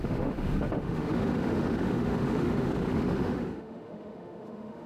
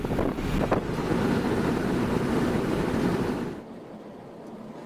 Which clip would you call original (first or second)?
second